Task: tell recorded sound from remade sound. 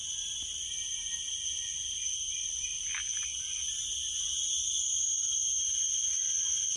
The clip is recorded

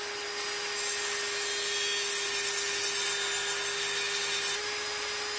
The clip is recorded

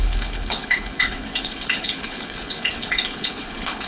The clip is remade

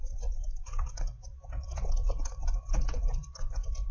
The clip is remade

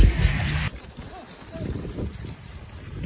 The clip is recorded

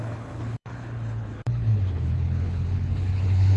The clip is remade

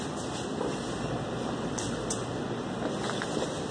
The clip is recorded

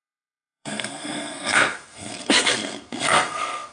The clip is remade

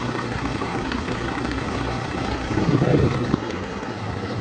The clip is remade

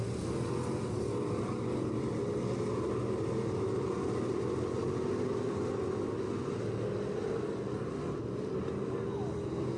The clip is recorded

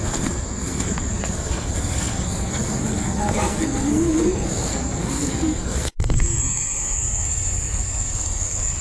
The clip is remade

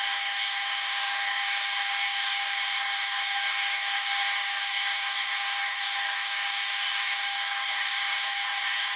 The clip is remade